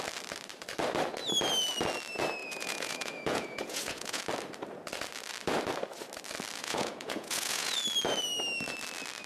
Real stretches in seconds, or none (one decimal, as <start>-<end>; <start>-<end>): 0.0-2.4; 4.2-6.6; 7.8-9.3